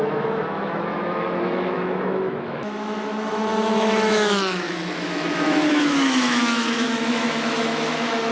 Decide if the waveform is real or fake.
fake